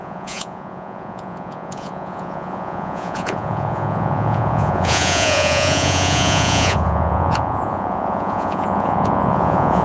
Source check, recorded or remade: remade